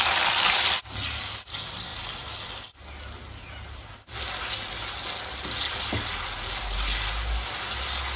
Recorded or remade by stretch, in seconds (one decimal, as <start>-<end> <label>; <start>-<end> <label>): 0.0-8.2 recorded